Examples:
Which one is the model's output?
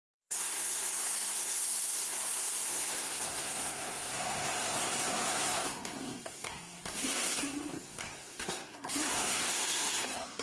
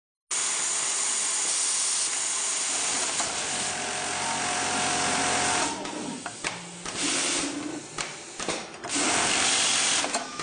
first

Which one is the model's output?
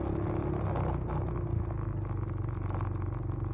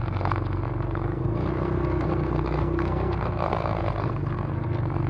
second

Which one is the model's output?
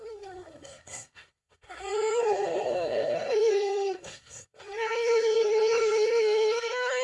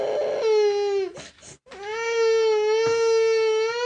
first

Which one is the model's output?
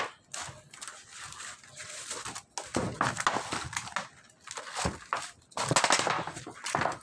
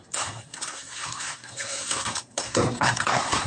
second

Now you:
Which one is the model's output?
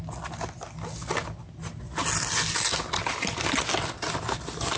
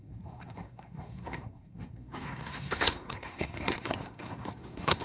second